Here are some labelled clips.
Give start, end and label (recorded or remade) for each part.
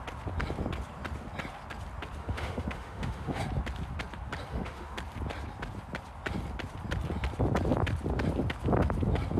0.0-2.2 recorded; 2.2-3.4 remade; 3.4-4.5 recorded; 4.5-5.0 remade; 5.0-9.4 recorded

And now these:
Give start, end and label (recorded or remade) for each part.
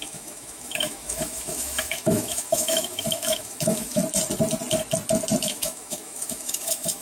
0.0-4.0 remade; 4.0-5.4 recorded; 5.4-7.0 remade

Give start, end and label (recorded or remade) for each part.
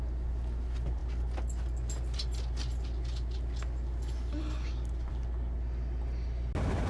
0.0-6.9 recorded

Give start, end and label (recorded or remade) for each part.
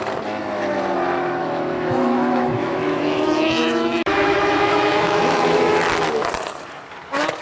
0.0-1.4 recorded; 1.4-5.8 remade; 5.8-7.4 recorded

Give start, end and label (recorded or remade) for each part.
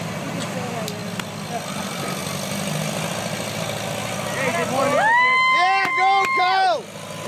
0.0-7.3 recorded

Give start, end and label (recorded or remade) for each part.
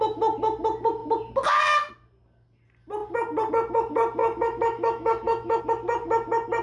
0.0-4.2 recorded; 4.2-5.6 remade; 5.6-6.6 recorded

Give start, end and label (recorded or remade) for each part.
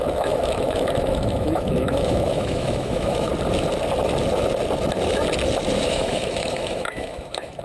0.0-3.3 remade; 3.3-5.9 recorded; 5.9-7.6 remade